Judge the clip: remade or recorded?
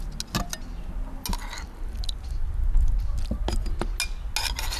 recorded